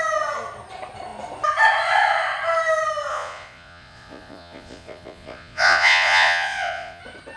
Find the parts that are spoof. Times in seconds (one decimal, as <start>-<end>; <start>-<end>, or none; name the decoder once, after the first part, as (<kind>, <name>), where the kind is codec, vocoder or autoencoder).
3.1-7.0 (vocoder, Vocos)